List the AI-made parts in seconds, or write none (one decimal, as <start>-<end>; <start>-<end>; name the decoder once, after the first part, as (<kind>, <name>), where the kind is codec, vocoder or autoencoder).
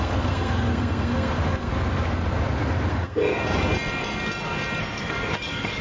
0.0-1.7 (codec, SNAC); 2.9-3.4; 4.8-5.8